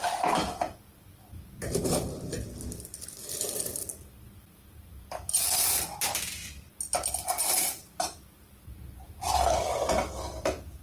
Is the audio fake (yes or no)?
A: no